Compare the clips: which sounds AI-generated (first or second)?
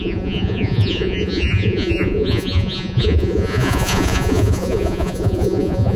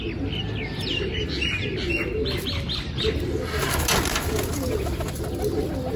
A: first